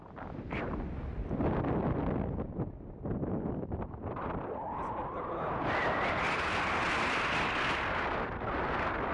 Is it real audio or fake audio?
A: real